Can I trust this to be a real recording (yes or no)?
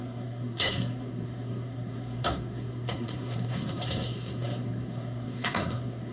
no